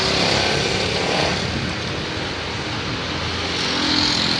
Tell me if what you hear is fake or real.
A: real